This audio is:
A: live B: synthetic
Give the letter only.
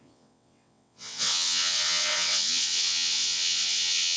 B